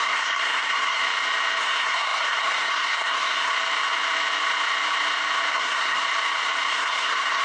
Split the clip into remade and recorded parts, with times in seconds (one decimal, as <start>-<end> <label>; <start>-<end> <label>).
0.0-1.0 remade; 1.0-1.6 recorded; 1.6-3.5 remade; 3.5-5.5 recorded; 5.5-6.0 remade; 6.0-6.7 recorded; 6.7-7.4 remade